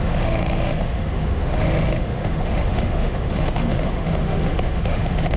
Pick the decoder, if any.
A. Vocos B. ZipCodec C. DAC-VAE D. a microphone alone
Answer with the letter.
C